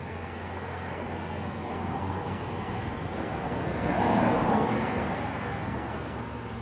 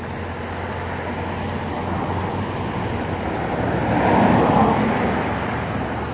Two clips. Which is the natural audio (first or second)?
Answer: second